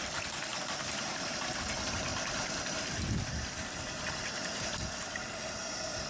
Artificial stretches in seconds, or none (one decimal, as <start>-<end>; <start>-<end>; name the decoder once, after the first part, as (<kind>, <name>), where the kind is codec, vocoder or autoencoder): 0.5-1.7 (vocoder, BigVGAN v2); 2.1-5.0